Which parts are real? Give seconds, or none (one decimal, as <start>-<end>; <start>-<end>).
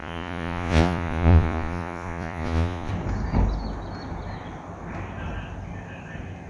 2.9-6.5